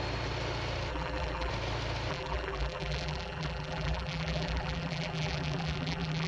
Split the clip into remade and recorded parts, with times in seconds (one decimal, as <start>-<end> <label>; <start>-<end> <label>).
0.0-0.9 recorded; 0.9-1.5 remade; 1.5-2.1 recorded; 2.1-6.3 remade